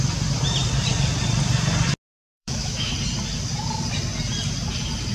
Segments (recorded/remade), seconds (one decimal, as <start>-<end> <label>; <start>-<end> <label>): 0.0-2.2 recorded; 2.2-2.9 remade; 2.9-5.1 recorded